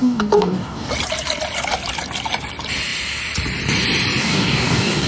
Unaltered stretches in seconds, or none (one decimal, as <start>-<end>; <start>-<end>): 0.9-4.2